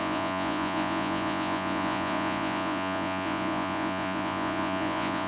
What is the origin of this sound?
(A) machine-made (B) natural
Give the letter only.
A